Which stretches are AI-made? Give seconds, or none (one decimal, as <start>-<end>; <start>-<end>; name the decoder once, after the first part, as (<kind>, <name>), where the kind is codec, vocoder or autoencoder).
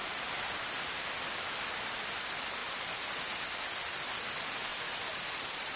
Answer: 0.0-4.7 (vocoder, BigVGAN v2); 5.3-5.8